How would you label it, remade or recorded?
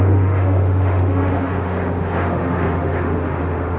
remade